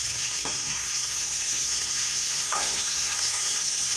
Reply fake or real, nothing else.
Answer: fake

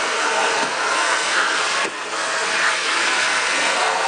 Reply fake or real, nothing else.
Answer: fake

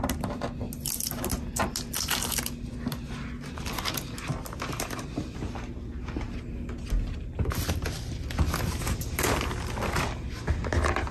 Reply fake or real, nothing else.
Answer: real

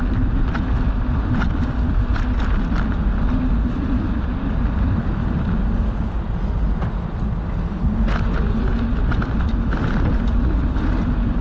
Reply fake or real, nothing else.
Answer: real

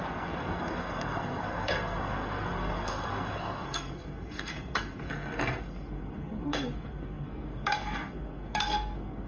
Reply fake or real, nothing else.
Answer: fake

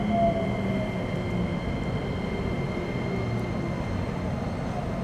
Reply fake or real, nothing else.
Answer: real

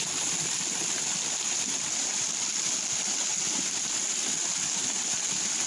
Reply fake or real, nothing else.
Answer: real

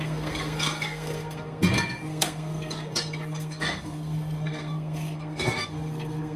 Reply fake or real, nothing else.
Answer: fake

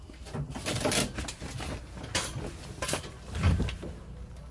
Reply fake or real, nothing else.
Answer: real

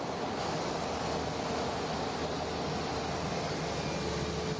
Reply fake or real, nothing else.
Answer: real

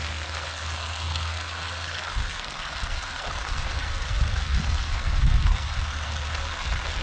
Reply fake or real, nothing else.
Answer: fake